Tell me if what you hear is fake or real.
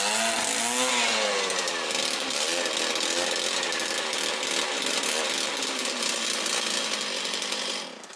real